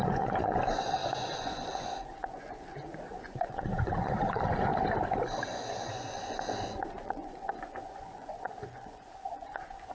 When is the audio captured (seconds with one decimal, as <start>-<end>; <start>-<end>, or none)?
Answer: 4.7-5.4

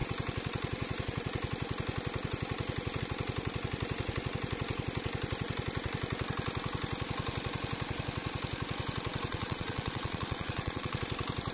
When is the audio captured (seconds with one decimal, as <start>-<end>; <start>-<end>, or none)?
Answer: 0.0-9.3; 11.0-11.5